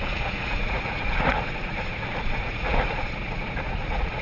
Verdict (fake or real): fake